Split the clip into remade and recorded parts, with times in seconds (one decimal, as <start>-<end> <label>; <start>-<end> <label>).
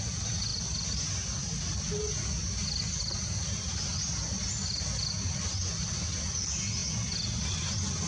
0.0-8.1 recorded